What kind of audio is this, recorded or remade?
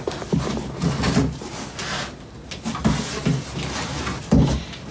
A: recorded